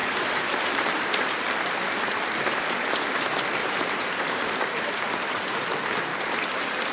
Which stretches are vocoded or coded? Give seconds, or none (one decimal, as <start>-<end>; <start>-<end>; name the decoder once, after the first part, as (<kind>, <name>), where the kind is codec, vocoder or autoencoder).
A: 0.0-1.3 (vocoder, BigVGAN v2); 3.6-4.6; 6.1-6.9